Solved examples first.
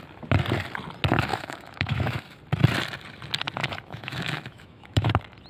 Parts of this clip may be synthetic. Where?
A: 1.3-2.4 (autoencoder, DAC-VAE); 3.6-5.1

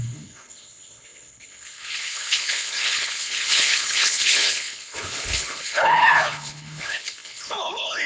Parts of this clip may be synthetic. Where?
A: 0.0-8.1 (codec, HILCodec)

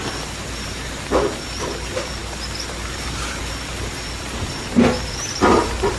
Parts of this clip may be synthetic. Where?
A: 0.0-2.2 (vocoder, BigVGAN v2); 3.4-6.0

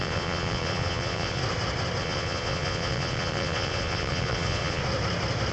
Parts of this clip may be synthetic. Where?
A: 0.0-1.4 (vocoder, Vocos); 2.0-4.8

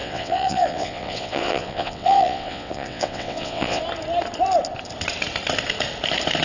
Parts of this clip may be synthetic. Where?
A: 0.0-3.8 (vocoder, WaveNeXt)